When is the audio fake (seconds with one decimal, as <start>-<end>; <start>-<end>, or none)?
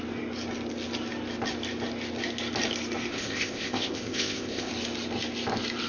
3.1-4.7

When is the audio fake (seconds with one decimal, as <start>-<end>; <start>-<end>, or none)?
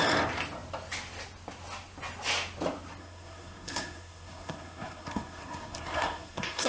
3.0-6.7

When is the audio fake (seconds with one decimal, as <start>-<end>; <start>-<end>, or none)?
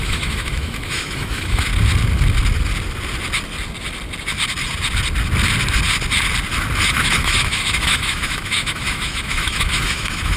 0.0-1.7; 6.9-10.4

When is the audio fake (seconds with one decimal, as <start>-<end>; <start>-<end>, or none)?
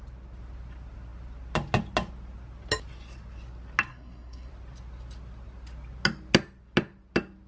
3.9-4.5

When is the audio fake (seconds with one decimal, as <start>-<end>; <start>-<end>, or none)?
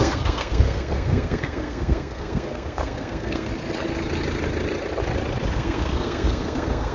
0.0-3.5; 5.5-6.9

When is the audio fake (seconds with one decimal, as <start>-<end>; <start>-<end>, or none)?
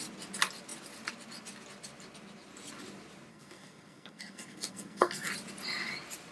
3.3-5.3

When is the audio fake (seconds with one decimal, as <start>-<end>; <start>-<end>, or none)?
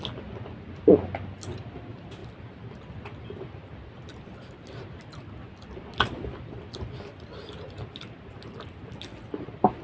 none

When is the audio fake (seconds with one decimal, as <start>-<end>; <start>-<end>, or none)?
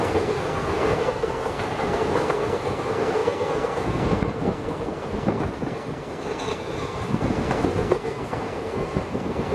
0.0-9.5